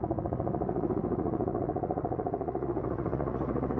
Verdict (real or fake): fake